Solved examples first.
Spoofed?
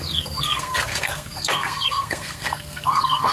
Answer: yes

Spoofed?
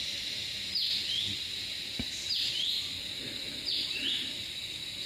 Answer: no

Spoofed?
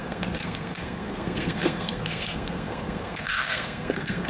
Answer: yes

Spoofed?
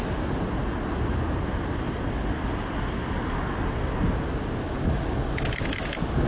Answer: no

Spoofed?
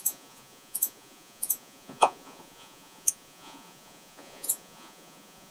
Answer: yes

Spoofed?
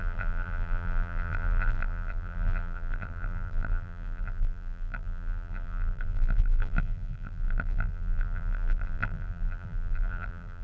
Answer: yes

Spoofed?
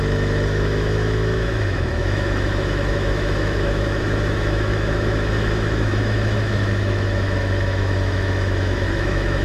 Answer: yes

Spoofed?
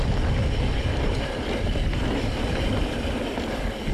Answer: no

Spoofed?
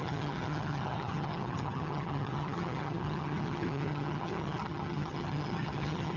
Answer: yes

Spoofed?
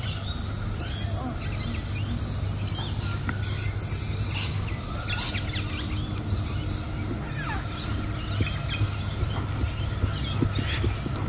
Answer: no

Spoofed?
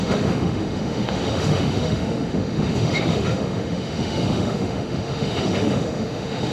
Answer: yes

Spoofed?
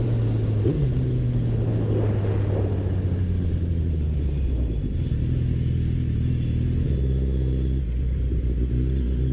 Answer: no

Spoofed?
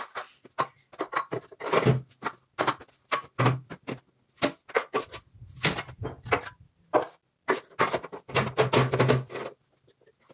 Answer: no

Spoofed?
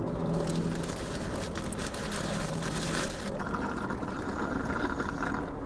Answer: no